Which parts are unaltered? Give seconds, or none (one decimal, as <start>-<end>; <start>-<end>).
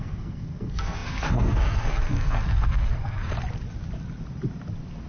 3.3-5.1